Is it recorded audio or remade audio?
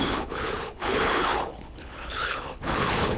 remade